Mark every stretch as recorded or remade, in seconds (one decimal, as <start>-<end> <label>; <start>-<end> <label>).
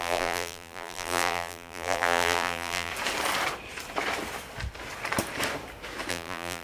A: 0.0-2.9 remade; 2.9-6.1 recorded; 6.1-6.6 remade